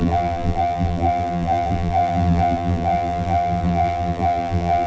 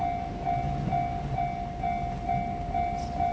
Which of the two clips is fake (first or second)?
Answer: first